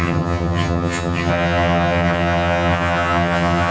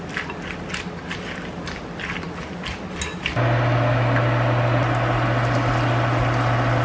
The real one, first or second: second